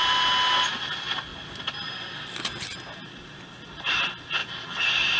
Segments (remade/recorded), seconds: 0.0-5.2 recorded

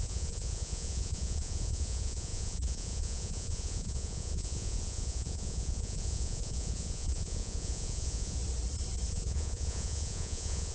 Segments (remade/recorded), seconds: 0.0-8.4 remade; 8.4-9.1 recorded; 9.1-10.7 remade

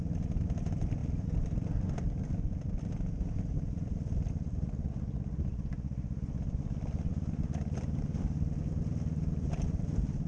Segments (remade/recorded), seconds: 0.0-10.3 recorded